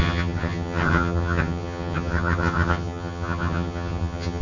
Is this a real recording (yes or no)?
no